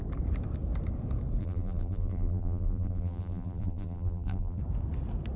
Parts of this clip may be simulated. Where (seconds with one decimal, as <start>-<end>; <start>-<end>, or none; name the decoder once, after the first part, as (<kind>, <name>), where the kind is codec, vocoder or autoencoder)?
1.4-4.6 (vocoder, BigVGAN v2)